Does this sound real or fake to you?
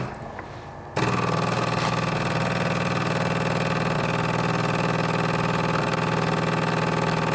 real